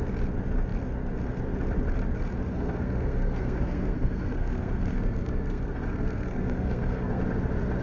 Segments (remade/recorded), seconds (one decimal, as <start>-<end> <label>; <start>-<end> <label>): 0.0-2.5 recorded; 2.5-7.2 remade; 7.2-7.8 recorded

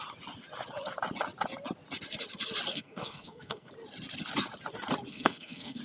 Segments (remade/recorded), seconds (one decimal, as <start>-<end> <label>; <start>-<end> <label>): 0.0-2.7 recorded; 2.7-3.7 remade; 3.7-5.1 recorded; 5.1-5.8 remade

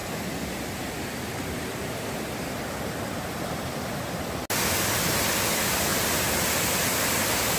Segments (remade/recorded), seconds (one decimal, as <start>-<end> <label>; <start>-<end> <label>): 0.0-7.6 recorded

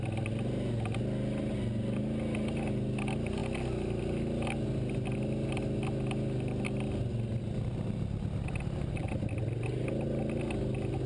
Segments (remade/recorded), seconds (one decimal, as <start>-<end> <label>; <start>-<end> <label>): 0.0-11.1 recorded